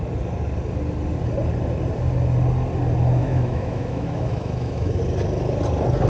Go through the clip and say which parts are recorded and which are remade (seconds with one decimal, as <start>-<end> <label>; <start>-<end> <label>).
0.0-3.2 recorded; 3.2-5.0 remade; 5.0-6.1 recorded